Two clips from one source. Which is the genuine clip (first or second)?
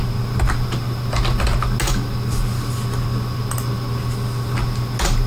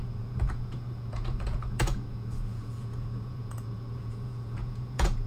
first